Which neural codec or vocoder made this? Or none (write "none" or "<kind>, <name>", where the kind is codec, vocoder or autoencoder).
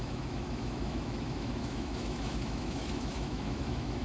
autoencoder, DAC-VAE